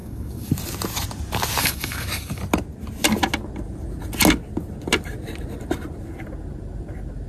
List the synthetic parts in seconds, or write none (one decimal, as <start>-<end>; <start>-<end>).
0.0-0.5; 1.6-2.4